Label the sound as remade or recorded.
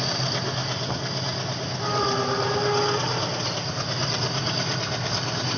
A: recorded